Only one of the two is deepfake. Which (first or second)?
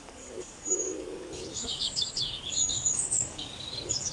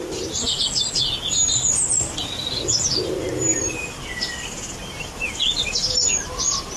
first